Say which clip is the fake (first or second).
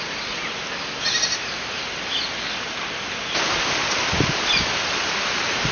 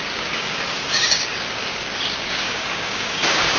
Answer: second